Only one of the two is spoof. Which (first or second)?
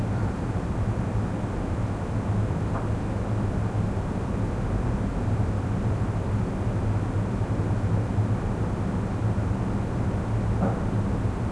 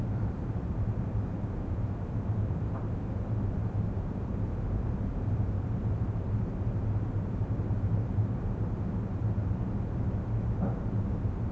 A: second